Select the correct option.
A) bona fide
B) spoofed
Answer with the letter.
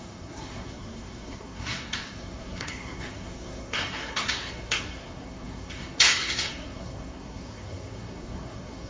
B